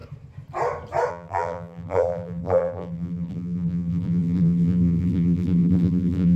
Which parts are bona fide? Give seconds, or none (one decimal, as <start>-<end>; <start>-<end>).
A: 0.0-1.1

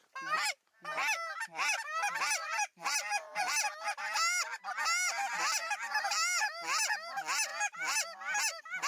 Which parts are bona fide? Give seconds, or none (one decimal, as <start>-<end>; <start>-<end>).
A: 0.0-2.4; 3.5-8.9

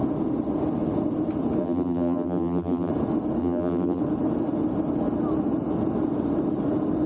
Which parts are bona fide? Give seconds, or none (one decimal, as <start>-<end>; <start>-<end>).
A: 0.0-1.6; 2.9-3.4; 4.0-7.1

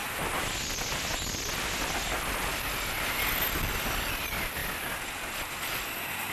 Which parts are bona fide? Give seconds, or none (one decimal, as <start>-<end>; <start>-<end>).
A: 0.0-6.3

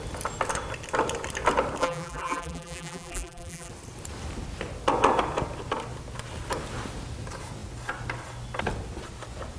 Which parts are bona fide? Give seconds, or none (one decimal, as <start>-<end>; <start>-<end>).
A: 0.0-1.8; 3.7-9.6

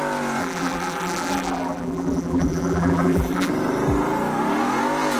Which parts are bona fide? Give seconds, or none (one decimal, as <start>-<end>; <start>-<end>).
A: 0.0-0.4; 3.5-5.2

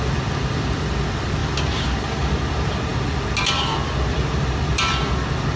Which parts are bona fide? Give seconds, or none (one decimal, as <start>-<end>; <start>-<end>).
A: 0.0-1.4; 2.4-5.6